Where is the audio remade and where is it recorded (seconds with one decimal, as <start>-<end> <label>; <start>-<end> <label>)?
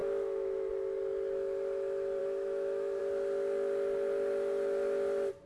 0.0-0.7 remade; 0.7-2.2 recorded; 2.2-3.0 remade; 3.0-5.5 recorded